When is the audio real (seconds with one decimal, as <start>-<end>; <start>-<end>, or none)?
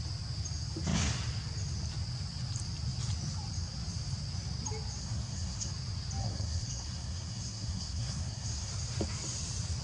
0.0-5.0; 5.7-6.2; 8.7-9.8